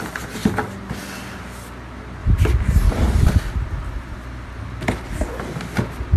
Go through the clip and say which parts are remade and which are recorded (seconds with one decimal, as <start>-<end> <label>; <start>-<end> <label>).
0.0-2.2 recorded; 2.2-3.4 remade; 3.4-6.2 recorded